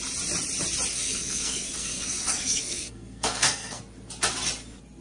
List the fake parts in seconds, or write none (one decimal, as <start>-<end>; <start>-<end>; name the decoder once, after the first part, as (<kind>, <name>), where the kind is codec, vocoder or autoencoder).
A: 0.9-3.8 (codec, SNAC)